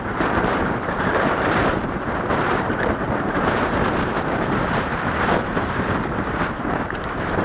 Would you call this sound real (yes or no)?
no